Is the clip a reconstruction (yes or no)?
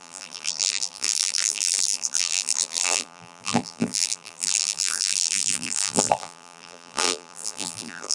yes